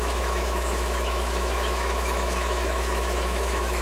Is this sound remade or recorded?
remade